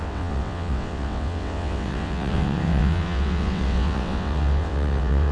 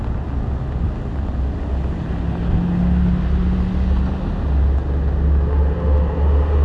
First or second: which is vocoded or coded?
first